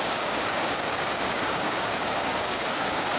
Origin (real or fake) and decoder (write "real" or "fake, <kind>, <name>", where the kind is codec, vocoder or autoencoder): fake, codec, DAC